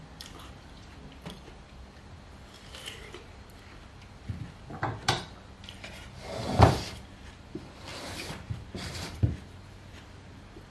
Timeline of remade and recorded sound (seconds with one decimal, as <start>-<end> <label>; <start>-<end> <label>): 0.0-10.7 remade

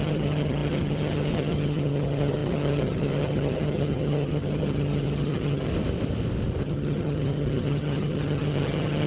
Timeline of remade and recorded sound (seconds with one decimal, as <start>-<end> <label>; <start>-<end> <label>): 0.0-5.7 remade; 5.7-6.6 recorded; 6.6-9.1 remade

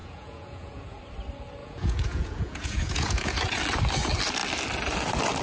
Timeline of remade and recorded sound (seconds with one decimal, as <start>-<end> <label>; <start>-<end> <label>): 0.0-1.0 remade; 1.0-1.6 recorded; 1.6-3.6 remade; 3.6-5.4 recorded

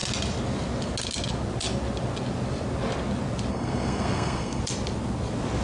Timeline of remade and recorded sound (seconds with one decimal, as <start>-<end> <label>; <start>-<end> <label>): 0.0-3.5 recorded; 3.5-4.6 remade; 4.6-5.6 recorded